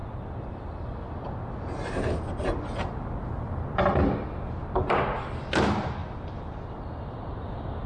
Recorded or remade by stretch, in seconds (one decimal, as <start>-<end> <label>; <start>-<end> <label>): 0.0-6.0 recorded; 6.0-6.5 remade; 6.5-7.9 recorded